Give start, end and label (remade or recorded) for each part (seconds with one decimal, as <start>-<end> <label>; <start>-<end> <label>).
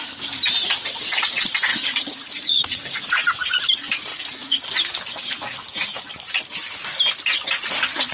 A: 0.0-1.7 recorded; 1.7-3.6 remade; 3.6-4.1 recorded; 4.1-4.6 remade; 4.6-8.1 recorded